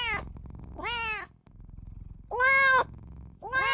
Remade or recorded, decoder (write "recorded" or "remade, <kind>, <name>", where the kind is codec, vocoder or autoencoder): recorded